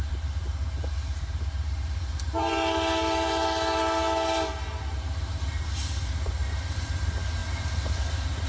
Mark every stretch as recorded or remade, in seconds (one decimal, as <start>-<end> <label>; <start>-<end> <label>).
0.0-8.5 remade